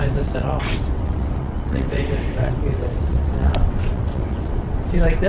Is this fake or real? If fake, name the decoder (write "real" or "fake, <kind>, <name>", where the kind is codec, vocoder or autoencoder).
fake, vocoder, WaveNeXt